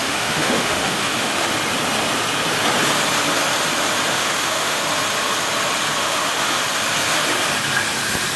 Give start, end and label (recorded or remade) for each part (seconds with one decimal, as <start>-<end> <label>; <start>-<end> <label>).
0.0-1.5 remade; 1.5-4.1 recorded; 4.1-4.8 remade; 4.8-6.0 recorded; 6.0-6.6 remade; 6.6-8.4 recorded